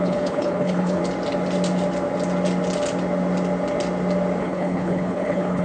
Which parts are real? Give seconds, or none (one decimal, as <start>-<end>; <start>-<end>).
1.0-4.4